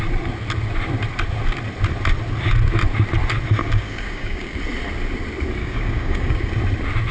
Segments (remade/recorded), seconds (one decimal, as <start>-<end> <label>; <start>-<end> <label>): 0.0-3.6 recorded; 3.6-4.6 remade; 4.6-5.6 recorded; 5.6-6.5 remade; 6.5-7.1 recorded